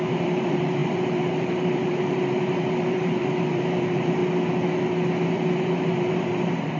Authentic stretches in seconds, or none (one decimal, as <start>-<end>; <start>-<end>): 4.2-5.3

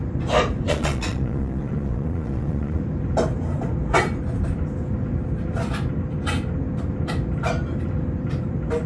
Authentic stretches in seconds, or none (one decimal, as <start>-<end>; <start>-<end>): 0.0-0.7; 2.8-8.9

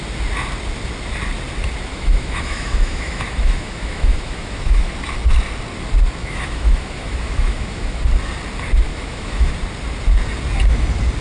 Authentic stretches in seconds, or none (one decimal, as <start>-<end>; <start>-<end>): 0.0-1.9; 4.9-6.2; 8.0-8.9; 9.5-11.2

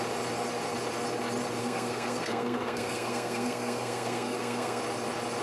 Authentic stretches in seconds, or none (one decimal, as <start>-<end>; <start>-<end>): 0.0-1.6; 4.8-5.4